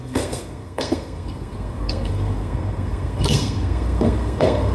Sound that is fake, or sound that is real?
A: fake